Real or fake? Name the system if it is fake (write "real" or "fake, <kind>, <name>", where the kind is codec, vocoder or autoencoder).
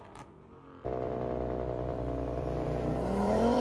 fake, vocoder, BigVGAN v2